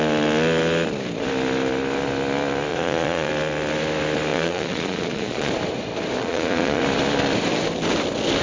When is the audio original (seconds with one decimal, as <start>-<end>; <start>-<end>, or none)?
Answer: 0.0-2.7; 3.3-4.3; 5.5-6.2; 6.8-8.4